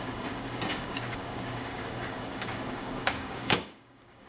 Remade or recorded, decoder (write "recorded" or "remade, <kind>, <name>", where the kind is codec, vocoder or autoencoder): remade, codec, DAC